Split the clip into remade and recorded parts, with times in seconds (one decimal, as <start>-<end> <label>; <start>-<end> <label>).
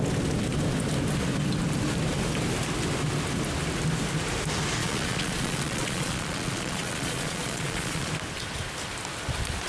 0.0-4.8 recorded; 4.8-8.1 remade; 8.1-9.7 recorded